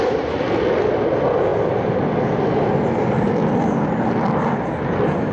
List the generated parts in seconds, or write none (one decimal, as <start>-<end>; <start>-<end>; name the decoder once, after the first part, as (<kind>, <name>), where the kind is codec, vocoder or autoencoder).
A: none